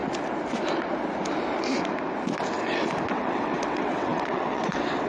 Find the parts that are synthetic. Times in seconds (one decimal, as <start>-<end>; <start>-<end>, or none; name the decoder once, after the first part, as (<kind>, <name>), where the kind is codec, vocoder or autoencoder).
3.1-5.1 (vocoder, WaveNeXt)